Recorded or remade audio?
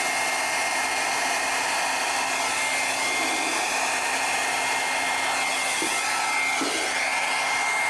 recorded